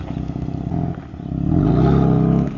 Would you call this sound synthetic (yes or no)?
no